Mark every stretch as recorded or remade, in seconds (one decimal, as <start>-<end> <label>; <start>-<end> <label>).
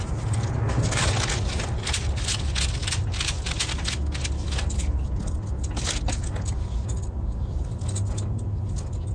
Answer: 0.0-2.8 recorded; 2.8-3.8 remade; 3.8-9.1 recorded